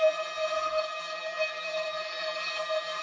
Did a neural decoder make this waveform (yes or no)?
yes